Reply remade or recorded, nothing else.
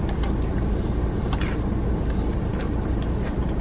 recorded